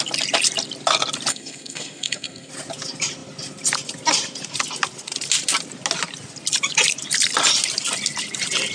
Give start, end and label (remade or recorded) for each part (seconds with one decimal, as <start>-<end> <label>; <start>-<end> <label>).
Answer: 0.0-1.3 recorded; 1.3-2.5 remade; 2.5-8.7 recorded